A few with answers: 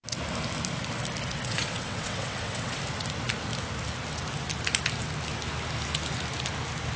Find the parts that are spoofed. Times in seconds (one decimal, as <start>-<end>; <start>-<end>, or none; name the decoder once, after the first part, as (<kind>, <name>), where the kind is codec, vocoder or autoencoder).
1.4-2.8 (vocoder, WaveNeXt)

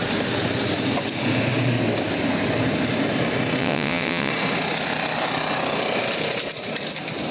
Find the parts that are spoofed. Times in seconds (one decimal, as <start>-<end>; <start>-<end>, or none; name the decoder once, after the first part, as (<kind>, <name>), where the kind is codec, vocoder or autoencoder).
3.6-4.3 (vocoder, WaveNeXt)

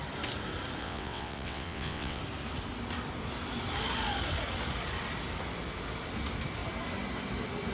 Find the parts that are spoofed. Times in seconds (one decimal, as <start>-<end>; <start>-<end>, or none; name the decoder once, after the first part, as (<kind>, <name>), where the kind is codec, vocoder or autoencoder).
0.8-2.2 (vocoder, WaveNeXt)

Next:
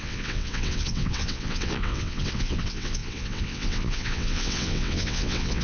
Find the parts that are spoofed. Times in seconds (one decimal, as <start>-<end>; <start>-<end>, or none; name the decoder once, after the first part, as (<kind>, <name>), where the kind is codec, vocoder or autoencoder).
0.0-5.6 (vocoder, WaveNeXt)